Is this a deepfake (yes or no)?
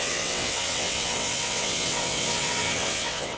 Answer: yes